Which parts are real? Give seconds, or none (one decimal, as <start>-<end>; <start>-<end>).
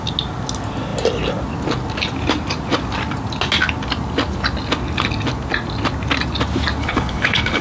0.0-6.8